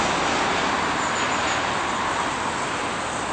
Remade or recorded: recorded